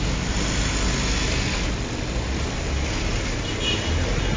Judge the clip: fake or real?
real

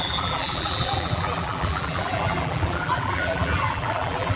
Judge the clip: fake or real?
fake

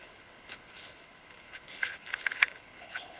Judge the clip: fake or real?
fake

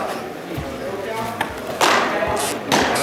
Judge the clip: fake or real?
real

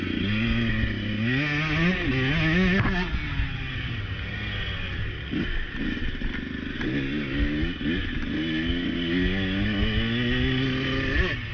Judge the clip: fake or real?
real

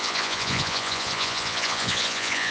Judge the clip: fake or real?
fake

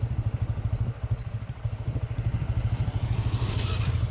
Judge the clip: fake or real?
fake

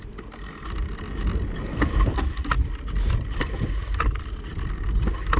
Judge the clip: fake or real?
real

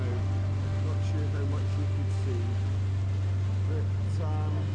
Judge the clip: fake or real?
real